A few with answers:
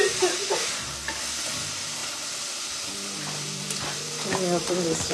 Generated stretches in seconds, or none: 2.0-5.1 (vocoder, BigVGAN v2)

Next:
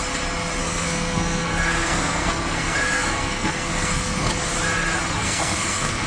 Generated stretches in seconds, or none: 0.6-4.3 (codec, SNAC); 5.2-6.1

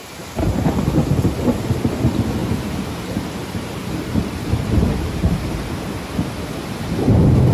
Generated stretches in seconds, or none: 0.0-0.8 (vocoder, BigVGAN v2); 2.4-5.4

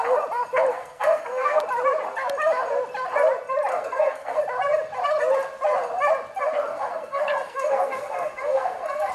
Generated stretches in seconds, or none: 0.7-1.6 (codec, SNAC); 3.7-4.4; 6.7-9.1

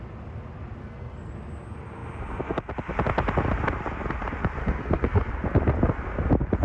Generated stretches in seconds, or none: 0.8-1.3 (codec, SNAC); 4.6-5.3